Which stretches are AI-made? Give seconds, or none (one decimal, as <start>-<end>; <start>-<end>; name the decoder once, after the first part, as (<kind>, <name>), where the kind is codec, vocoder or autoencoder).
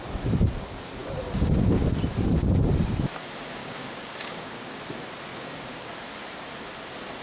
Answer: 3.6-4.7 (codec, DAC); 5.3-5.9